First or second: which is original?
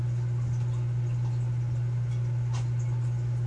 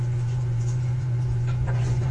first